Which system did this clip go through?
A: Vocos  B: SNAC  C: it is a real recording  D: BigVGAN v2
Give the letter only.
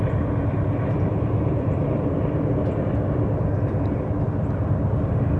D